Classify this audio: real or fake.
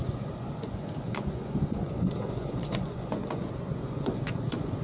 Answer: fake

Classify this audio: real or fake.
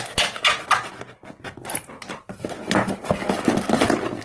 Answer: real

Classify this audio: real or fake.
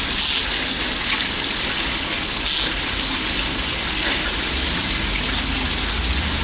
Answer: real